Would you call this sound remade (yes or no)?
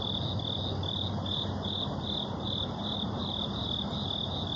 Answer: no